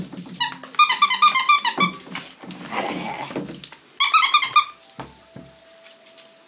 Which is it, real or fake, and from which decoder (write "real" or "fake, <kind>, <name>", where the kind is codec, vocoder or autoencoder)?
real